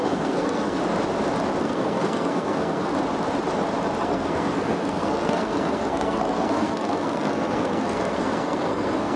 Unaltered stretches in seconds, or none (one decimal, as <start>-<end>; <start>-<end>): 0.8-1.6; 2.9-4.0